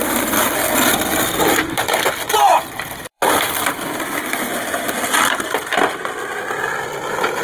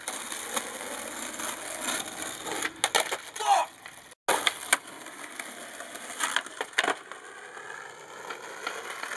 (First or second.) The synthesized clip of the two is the first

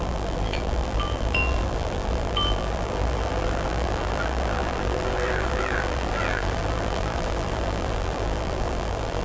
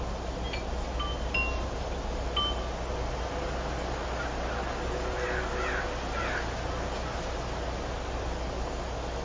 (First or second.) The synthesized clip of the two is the first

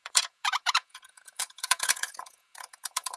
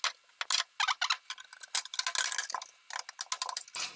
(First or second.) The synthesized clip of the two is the first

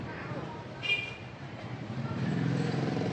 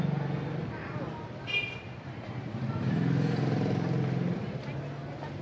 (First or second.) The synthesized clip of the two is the first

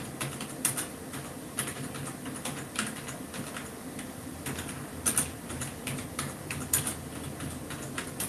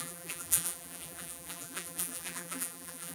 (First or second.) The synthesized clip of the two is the second